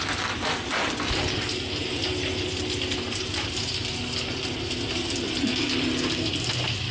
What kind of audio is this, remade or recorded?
recorded